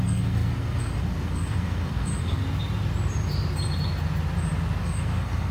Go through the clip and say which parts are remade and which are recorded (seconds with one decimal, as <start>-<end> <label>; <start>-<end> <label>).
0.0-2.4 remade; 2.4-4.8 recorded; 4.8-5.5 remade